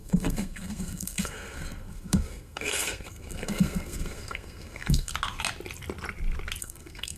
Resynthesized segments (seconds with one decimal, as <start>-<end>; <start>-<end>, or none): 0.0-5.1; 6.6-7.2